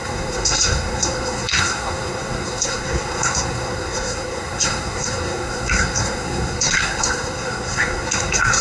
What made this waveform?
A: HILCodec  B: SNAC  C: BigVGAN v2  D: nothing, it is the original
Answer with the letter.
B